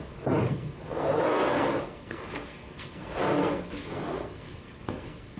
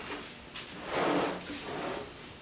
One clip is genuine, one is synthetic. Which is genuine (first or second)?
second